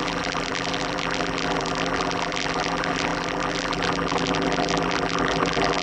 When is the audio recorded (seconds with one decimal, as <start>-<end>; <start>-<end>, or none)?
none